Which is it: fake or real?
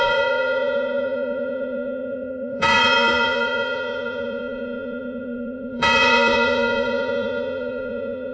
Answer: fake